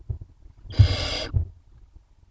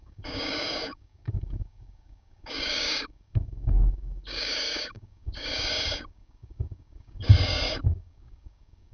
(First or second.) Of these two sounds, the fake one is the second